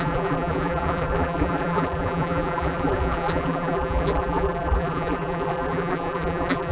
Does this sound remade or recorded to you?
remade